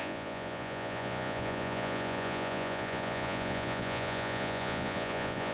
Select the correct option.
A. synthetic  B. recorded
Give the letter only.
A